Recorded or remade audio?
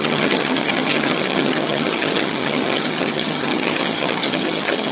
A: remade